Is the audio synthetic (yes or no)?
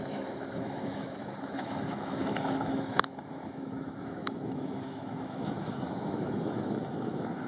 yes